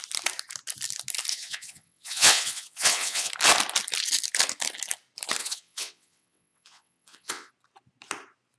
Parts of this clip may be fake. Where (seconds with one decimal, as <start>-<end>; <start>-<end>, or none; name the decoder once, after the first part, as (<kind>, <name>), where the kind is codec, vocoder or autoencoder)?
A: 1.3-3.3 (vocoder, WaveNeXt); 5.4-7.5